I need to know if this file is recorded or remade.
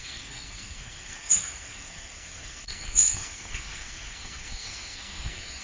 remade